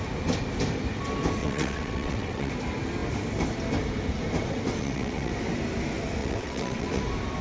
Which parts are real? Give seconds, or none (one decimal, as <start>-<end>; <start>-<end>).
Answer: 0.0-1.4; 2.5-4.8; 5.3-6.2; 7.0-7.4